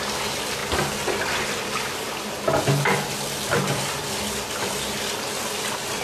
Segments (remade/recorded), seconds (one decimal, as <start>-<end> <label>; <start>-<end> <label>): 0.0-6.0 recorded